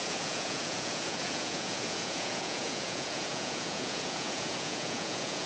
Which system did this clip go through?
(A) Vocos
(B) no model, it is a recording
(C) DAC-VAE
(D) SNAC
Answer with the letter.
A